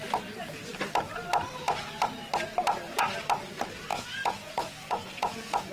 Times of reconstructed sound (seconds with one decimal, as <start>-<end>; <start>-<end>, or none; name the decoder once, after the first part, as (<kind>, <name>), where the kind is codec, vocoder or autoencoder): 3.9-5.7 (vocoder, Vocos)